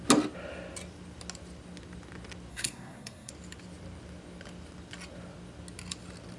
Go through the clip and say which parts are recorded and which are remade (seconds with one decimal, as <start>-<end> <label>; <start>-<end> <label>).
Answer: 0.0-2.5 recorded; 2.5-3.3 remade; 3.3-6.4 recorded